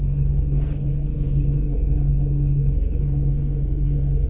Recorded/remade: remade